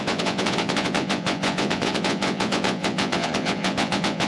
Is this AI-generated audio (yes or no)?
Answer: yes